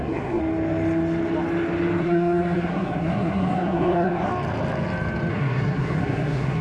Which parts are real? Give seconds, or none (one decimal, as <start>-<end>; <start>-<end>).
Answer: 0.4-2.0; 4.3-5.3